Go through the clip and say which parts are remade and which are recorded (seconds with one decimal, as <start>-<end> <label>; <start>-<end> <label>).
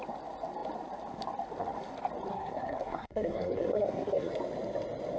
0.0-2.3 recorded; 2.3-4.3 remade; 4.3-5.2 recorded